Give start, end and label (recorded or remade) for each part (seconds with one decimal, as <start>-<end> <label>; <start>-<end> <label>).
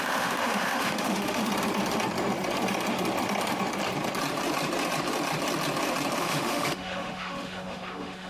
0.0-1.4 remade; 1.4-6.2 recorded; 6.2-8.3 remade